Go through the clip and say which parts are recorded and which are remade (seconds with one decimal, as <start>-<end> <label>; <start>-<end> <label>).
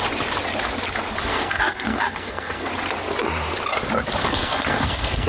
0.0-1.3 recorded; 1.3-2.7 remade; 2.7-4.2 recorded; 4.2-5.3 remade